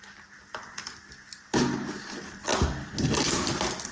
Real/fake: real